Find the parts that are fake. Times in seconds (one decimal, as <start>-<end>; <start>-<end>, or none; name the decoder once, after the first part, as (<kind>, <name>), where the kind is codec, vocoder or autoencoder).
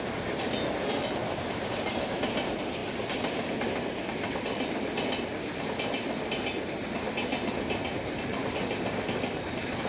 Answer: none